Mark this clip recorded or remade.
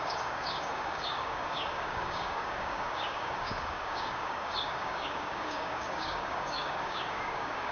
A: remade